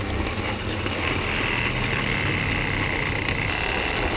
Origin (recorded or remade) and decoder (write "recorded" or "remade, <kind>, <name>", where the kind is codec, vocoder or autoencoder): recorded